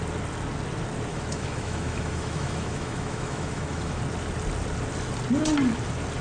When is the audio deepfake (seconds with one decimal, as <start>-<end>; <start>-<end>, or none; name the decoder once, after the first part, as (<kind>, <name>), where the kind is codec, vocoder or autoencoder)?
1.1-4.0 (autoencoder, DAC-VAE)